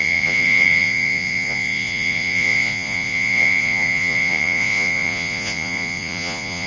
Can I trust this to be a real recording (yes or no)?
no